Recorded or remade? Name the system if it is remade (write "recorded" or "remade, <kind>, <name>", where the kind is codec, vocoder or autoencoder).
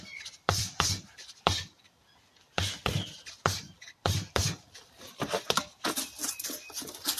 remade, vocoder, BigVGAN v2